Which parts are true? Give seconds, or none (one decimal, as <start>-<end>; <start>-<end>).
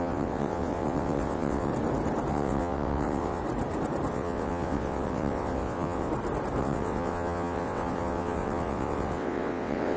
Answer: 1.7-2.3; 3.4-4.1; 6.1-6.6